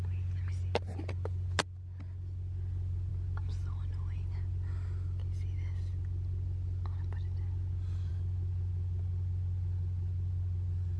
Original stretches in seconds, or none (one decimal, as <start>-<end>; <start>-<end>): 0.0-11.0